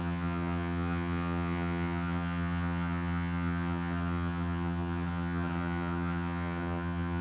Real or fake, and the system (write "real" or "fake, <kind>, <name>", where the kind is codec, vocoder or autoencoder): fake, vocoder, HiFi-GAN